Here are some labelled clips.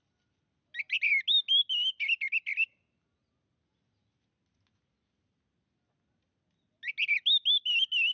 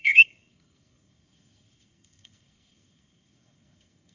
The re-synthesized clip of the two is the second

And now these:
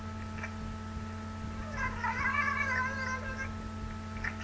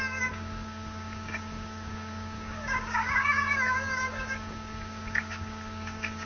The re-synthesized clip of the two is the second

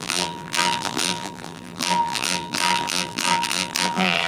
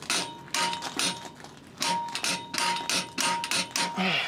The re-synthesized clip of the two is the first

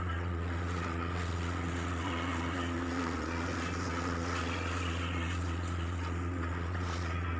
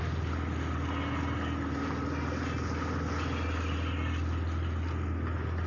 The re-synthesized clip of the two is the first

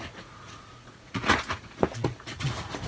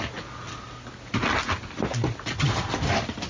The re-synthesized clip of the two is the first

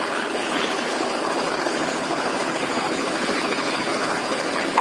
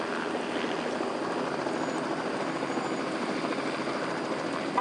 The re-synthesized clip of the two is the first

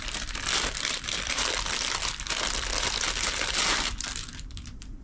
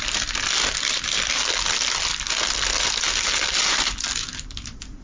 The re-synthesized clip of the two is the first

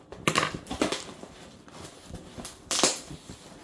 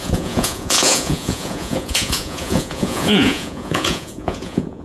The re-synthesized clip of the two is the second